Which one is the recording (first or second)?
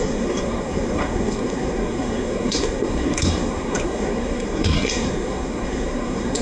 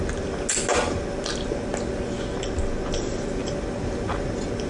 second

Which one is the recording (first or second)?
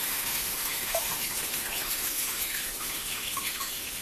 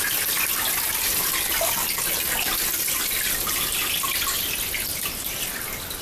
second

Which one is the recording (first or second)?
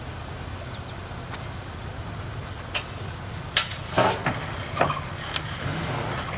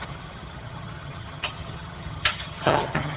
first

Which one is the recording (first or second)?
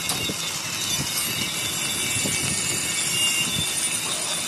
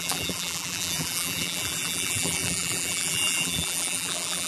first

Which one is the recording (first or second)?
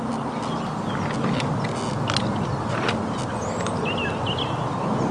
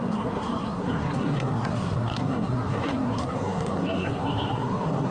first